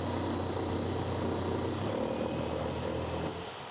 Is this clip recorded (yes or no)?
yes